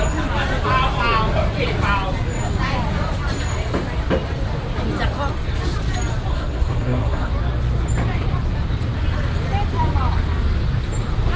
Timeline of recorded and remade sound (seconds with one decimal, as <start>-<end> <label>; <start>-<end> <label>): 0.0-6.3 recorded; 6.3-7.3 remade; 7.3-11.4 recorded